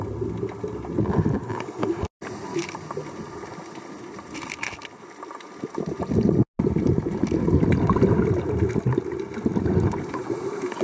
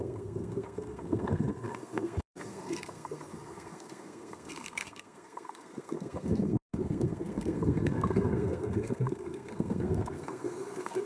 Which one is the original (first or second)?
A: first